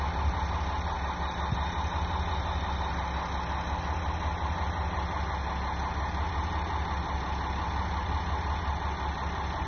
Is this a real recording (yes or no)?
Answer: yes